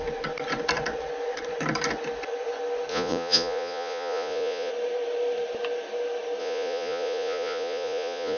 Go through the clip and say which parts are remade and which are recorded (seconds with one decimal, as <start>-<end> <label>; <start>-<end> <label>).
0.0-2.9 recorded; 2.9-4.7 remade; 4.7-6.4 recorded; 6.4-8.4 remade

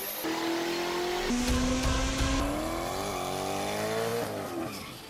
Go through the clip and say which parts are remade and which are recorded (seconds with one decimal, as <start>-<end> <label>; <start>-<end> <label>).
0.0-4.1 recorded; 4.1-4.6 remade; 4.6-5.1 recorded

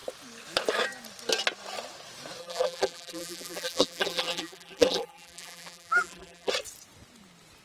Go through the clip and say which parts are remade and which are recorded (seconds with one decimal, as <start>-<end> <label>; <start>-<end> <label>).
0.0-2.4 recorded; 2.4-6.5 remade; 6.5-7.6 recorded

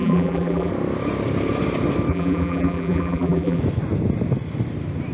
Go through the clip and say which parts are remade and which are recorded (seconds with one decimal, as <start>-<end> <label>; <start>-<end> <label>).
0.0-0.7 remade; 0.7-2.1 recorded; 2.1-3.6 remade; 3.6-5.1 recorded